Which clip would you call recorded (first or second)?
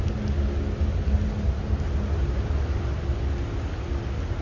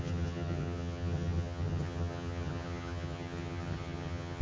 first